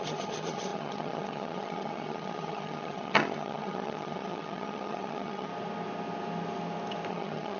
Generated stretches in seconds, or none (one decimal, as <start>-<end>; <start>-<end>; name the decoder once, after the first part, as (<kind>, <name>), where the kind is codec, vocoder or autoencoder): 0.0-5.5 (vocoder, HiFi-GAN); 7.1-7.6

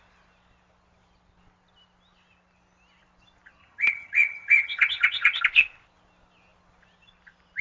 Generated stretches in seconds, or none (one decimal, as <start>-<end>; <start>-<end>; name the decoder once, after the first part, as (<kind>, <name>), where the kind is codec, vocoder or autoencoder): 3.6-5.4 (vocoder, HiFi-GAN)

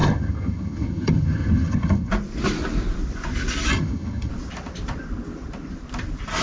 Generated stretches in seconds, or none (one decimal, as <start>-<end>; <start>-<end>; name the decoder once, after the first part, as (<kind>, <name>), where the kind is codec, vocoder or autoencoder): 0.0-2.1 (vocoder, HiFi-GAN); 3.7-4.3

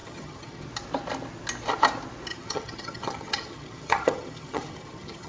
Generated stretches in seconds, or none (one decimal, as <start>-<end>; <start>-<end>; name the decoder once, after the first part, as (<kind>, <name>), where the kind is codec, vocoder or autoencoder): 0.0-0.7 (vocoder, HiFi-GAN); 2.3-5.3

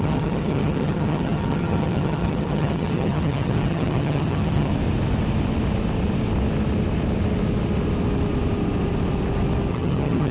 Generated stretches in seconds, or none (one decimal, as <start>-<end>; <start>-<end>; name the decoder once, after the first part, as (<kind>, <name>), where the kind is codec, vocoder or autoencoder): 0.0-4.7 (vocoder, HiFi-GAN); 9.7-10.3